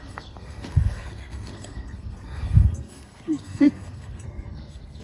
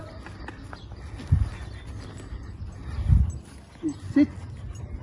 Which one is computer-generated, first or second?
first